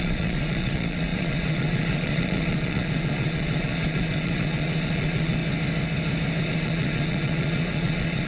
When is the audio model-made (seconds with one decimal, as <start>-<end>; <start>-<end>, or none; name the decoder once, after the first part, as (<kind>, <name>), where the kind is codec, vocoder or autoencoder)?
0.0-5.4 (vocoder, Vocos); 6.4-8.3